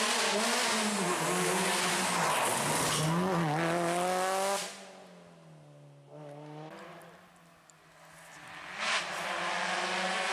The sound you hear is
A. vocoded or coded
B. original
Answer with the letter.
B